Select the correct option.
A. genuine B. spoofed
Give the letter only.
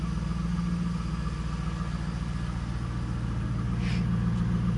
A